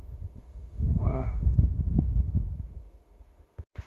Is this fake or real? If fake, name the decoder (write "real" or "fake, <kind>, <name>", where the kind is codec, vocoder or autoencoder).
fake, autoencoder, DAC-VAE